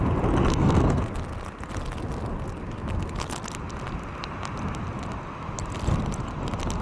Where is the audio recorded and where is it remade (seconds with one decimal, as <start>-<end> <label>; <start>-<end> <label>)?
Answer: 0.0-0.5 recorded; 0.5-1.0 remade; 1.0-6.8 recorded